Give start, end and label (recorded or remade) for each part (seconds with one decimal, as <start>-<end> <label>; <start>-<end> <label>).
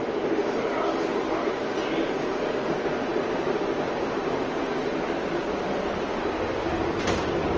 0.0-4.8 recorded; 4.8-6.2 remade; 6.2-7.6 recorded